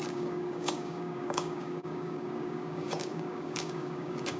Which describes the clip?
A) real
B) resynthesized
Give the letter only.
B